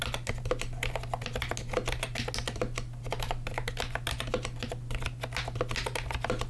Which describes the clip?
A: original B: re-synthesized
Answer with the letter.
A